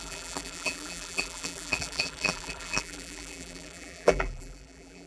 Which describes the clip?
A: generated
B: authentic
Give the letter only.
A